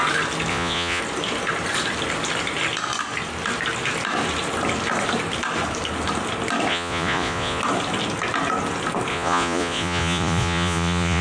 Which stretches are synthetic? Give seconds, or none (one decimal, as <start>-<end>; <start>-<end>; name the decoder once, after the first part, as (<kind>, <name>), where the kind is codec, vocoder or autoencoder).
0.5-1.0 (vocoder, Vocos); 6.7-7.6; 9.1-11.2